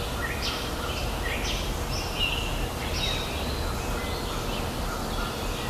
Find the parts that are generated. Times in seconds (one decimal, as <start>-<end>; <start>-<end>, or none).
none